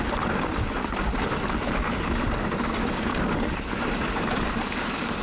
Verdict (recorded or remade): recorded